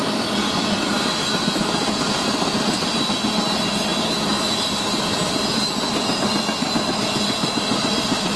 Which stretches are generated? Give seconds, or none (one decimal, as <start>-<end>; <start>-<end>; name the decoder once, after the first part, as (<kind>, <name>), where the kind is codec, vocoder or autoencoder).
none